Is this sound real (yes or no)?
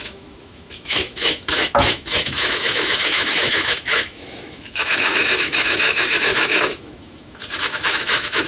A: no